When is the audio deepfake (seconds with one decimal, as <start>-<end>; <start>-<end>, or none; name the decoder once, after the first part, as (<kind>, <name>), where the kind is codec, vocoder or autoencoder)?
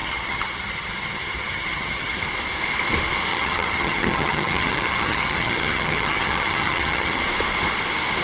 0.0-2.2 (vocoder, HiFi-GAN); 3.3-7.2